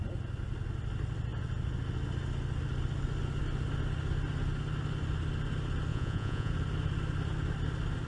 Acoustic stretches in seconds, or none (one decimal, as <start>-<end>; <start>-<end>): 0.0-5.9; 6.5-8.1